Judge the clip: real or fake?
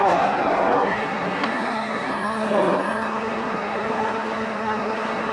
fake